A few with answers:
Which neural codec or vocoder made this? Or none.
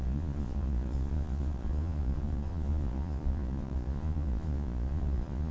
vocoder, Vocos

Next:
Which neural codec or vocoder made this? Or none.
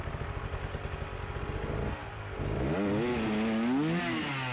none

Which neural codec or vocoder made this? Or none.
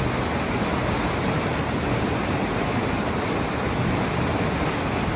none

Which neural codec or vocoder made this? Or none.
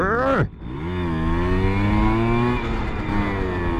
none